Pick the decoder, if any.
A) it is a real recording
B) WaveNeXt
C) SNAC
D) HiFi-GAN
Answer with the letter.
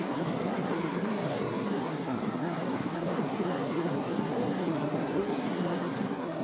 C